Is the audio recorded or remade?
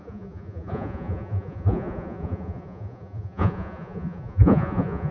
remade